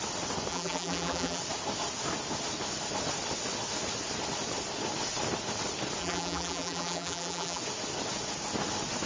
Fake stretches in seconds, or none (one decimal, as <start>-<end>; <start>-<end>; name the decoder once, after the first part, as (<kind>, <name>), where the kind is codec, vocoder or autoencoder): 0.5-1.4 (vocoder, BigVGAN v2); 6.0-7.6